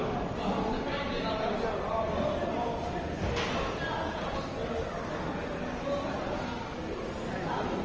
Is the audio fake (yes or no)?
no